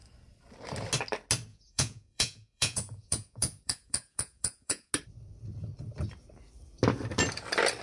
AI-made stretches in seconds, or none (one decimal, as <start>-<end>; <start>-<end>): 1.5-4.9